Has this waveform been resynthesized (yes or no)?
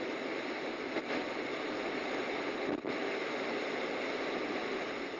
no